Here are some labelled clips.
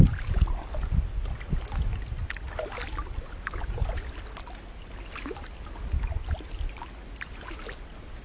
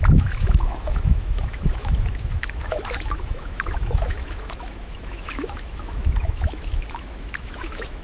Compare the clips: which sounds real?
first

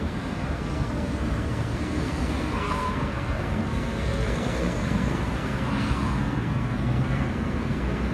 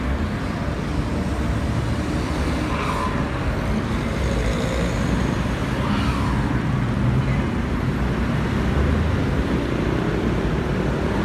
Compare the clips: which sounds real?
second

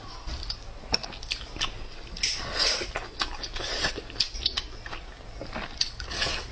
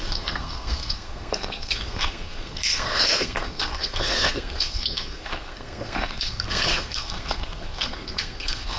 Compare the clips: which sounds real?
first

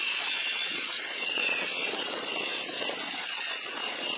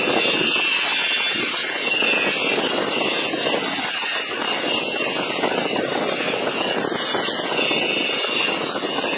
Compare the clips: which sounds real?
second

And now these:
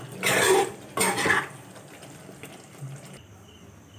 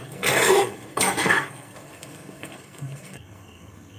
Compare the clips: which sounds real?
first